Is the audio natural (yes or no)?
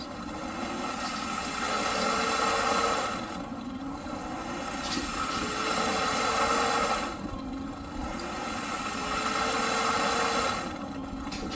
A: yes